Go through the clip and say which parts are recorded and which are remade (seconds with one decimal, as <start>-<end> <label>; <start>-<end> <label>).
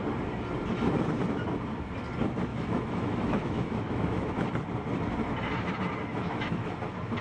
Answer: 0.0-2.5 recorded; 2.5-4.3 remade; 4.3-6.1 recorded; 6.1-6.7 remade; 6.7-7.2 recorded